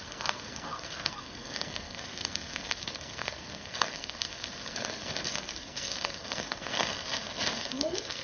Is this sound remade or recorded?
remade